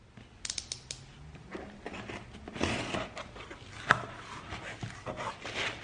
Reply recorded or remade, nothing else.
recorded